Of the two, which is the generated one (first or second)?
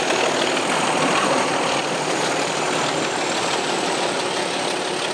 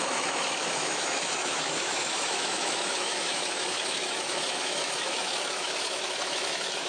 second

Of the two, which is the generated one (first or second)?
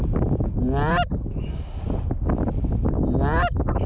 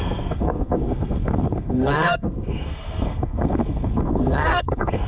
second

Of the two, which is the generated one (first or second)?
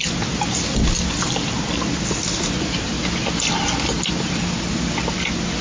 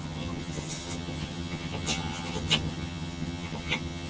second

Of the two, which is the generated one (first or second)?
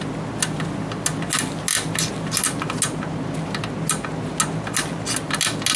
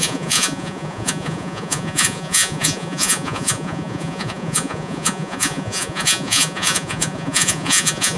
second